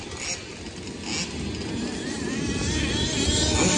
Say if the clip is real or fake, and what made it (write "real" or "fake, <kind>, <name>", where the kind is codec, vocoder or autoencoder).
real